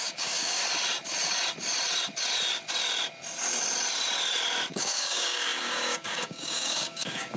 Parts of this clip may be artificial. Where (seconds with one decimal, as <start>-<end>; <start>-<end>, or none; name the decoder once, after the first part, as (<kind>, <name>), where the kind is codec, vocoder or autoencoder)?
0.0-0.6 (codec, DAC); 4.7-7.4